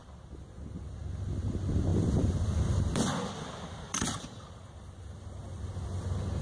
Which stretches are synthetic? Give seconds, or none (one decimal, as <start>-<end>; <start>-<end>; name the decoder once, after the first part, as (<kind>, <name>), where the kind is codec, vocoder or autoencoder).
1.9-5.7 (vocoder, BigVGAN v2)